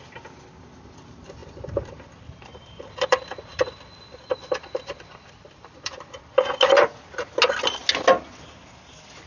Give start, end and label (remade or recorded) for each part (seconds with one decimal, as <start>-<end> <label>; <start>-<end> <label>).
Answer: 0.0-1.4 recorded; 1.4-6.2 remade; 6.2-9.3 recorded